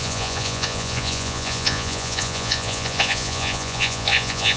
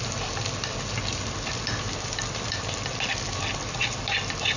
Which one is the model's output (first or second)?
first